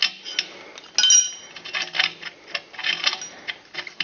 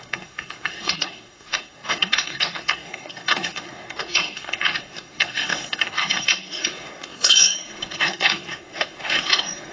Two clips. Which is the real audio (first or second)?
first